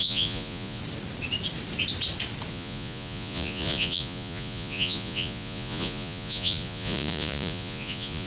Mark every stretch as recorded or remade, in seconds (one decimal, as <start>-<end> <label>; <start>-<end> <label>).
0.0-0.8 remade; 0.8-2.5 recorded; 2.5-8.3 remade